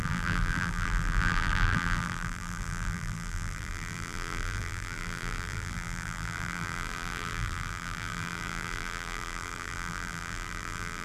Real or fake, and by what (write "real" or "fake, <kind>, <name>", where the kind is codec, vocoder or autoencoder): fake, vocoder, BigVGAN v2